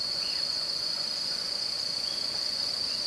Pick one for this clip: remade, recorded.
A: remade